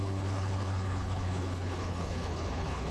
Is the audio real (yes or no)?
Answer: no